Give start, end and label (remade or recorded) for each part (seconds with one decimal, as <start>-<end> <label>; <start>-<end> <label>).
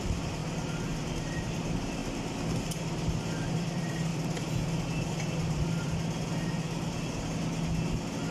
0.0-0.4 remade; 0.4-1.1 recorded; 1.1-2.0 remade; 2.0-3.5 recorded; 3.5-4.1 remade; 4.1-8.3 recorded